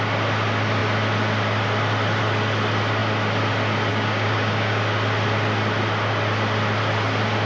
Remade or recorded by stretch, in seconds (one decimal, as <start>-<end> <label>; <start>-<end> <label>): 0.0-3.9 recorded; 3.9-4.8 remade; 4.8-7.5 recorded